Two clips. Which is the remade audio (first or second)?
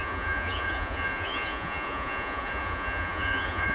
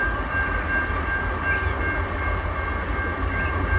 first